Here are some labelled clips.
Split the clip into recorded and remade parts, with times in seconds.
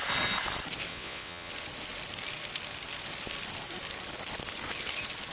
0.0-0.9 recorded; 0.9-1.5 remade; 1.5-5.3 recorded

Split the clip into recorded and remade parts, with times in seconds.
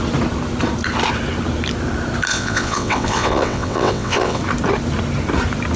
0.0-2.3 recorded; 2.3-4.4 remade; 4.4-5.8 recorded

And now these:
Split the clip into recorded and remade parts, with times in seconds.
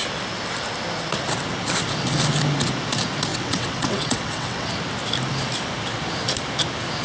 0.0-3.3 recorded; 3.3-4.7 remade; 4.7-7.0 recorded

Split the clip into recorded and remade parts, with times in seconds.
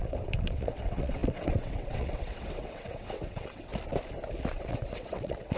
0.0-3.7 remade; 3.7-4.5 recorded; 4.5-5.6 remade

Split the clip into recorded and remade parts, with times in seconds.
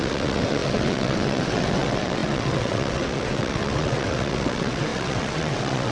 0.0-5.9 remade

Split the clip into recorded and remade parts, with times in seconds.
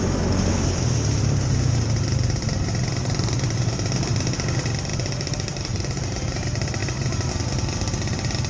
0.0-8.5 recorded